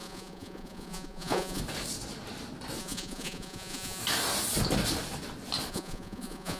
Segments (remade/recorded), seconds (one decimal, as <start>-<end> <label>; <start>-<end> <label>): 0.0-1.6 remade; 1.6-2.8 recorded; 2.8-4.0 remade; 4.0-5.7 recorded; 5.7-6.6 remade